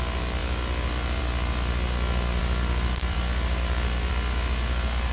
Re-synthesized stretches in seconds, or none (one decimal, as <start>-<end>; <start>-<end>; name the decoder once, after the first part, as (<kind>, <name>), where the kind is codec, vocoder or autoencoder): 2.4-4.1 (vocoder, BigVGAN v2)